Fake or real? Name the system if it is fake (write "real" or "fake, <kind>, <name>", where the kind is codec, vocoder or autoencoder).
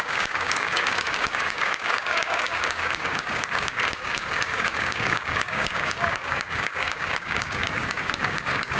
fake, codec, DAC